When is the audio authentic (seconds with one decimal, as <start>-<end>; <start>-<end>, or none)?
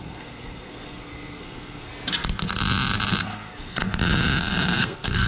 1.9-3.2; 3.8-4.8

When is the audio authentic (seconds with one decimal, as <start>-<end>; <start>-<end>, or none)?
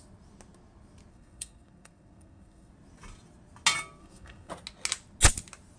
0.0-1.1; 2.7-4.0; 4.5-5.8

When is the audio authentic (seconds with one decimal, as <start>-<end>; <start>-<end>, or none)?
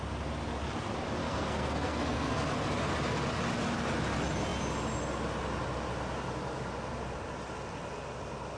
0.0-1.2; 2.3-8.6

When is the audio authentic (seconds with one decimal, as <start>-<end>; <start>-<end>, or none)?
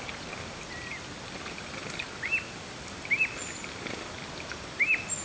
0.0-5.2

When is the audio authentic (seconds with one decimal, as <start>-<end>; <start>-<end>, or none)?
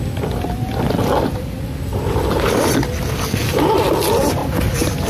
0.0-5.1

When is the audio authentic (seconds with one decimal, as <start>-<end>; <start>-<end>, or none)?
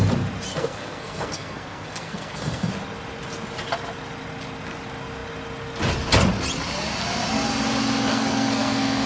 0.0-0.5; 2.7-8.1